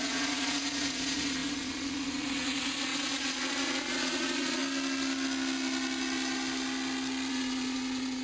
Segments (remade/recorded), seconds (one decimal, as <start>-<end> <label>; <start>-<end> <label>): 0.0-4.6 remade; 4.6-7.3 recorded; 7.3-8.2 remade